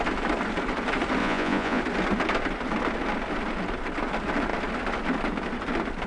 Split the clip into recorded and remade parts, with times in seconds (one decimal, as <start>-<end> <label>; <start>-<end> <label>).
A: 0.0-1.2 recorded; 1.2-1.8 remade; 1.8-6.1 recorded